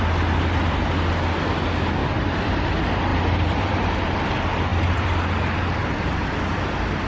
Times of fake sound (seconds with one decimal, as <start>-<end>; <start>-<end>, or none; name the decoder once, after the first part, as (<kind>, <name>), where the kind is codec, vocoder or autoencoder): 2.0-2.5 (vocoder, BigVGAN v2); 3.1-3.8; 4.7-5.2